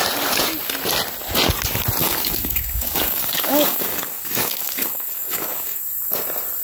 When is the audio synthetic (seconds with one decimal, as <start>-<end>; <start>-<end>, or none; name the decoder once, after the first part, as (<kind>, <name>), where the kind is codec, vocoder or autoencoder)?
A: 2.0-5.8 (codec, DAC)